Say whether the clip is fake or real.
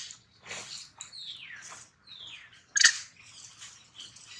real